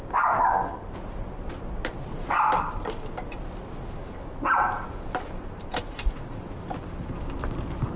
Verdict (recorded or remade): recorded